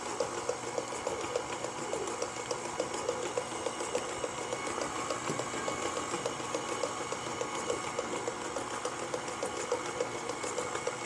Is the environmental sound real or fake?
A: real